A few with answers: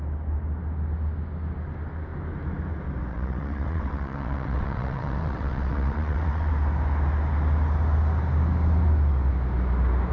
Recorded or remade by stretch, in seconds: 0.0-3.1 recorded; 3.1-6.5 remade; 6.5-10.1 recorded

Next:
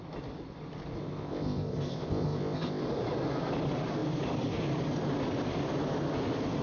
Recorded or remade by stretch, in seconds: 0.0-1.0 recorded; 1.0-2.8 remade; 2.8-6.6 recorded

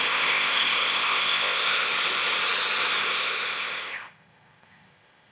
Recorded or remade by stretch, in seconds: 0.0-1.9 remade; 1.9-3.0 recorded; 3.0-5.3 remade

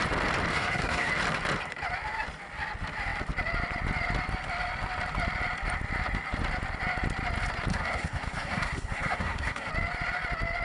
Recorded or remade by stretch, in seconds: 0.0-0.5 recorded; 0.5-1.1 remade; 1.1-7.7 recorded; 7.7-9.7 remade; 9.7-10.6 recorded

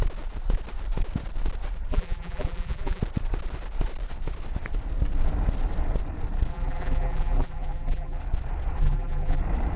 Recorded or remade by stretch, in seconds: 0.0-1.9 recorded; 1.9-3.0 remade; 3.0-6.5 recorded; 6.5-8.2 remade; 8.2-8.8 recorded; 8.8-9.4 remade; 9.4-9.8 recorded

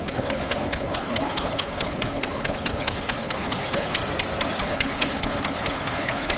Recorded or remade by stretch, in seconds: 0.0-4.0 remade; 4.0-4.6 recorded; 4.6-6.4 remade

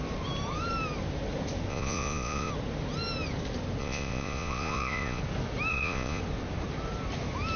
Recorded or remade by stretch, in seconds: 0.0-1.7 recorded; 1.7-2.5 remade; 2.5-3.8 recorded; 3.8-5.2 remade; 5.2-5.7 recorded; 5.7-6.2 remade; 6.2-7.6 recorded

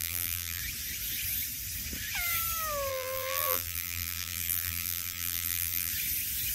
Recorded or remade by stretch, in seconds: 0.0-0.6 remade; 0.6-2.9 recorded; 2.9-5.9 remade; 5.9-6.5 recorded